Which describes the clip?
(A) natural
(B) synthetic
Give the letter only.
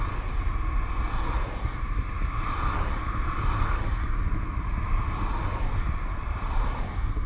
A